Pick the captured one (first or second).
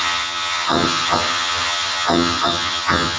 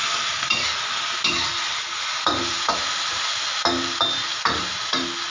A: second